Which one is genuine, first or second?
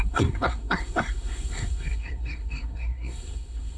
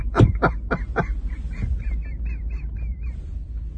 second